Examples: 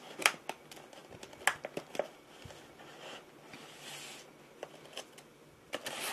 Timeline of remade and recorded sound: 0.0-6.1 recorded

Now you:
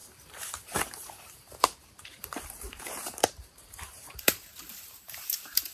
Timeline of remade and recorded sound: 0.0-5.7 remade

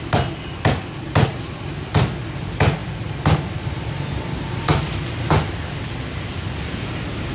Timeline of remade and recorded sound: 0.0-7.3 recorded

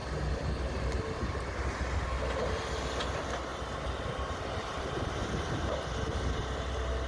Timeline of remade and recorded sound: 0.0-5.2 recorded; 5.2-5.8 remade; 5.8-7.1 recorded

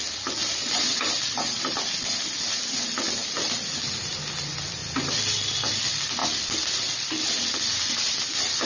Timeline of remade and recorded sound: 0.0-0.4 recorded; 0.4-1.0 remade; 1.0-3.2 recorded; 3.2-3.8 remade; 3.8-8.7 recorded

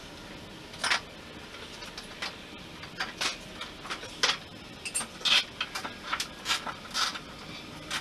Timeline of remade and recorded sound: 0.0-8.0 recorded

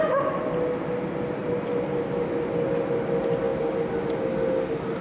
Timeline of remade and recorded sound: 0.0-5.0 recorded